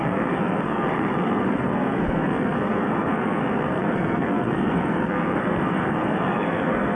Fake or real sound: fake